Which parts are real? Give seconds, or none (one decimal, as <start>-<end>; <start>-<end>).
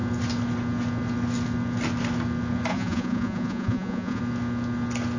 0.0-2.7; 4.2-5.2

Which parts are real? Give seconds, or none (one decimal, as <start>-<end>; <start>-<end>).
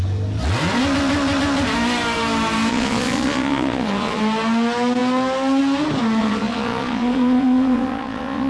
0.0-2.7; 4.2-6.2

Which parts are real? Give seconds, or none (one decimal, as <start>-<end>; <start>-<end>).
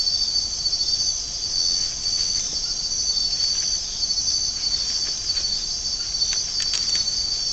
0.0-1.5; 2.4-7.5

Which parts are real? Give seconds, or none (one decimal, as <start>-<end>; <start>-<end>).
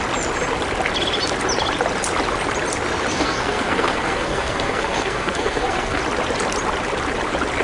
0.0-3.1; 6.0-7.6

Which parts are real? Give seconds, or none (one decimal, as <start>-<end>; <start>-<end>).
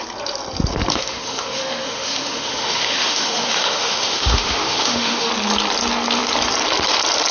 0.0-0.9; 5.3-7.3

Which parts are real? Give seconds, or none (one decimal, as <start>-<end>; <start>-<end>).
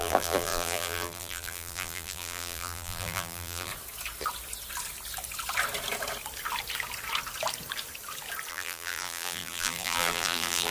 3.7-8.5